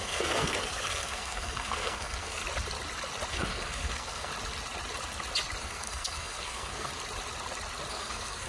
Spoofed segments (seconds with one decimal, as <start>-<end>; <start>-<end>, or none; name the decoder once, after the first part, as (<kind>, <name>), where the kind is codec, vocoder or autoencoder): 0.0-2.4 (codec, SNAC); 3.3-4.3; 5.6-6.9; 7.9-8.5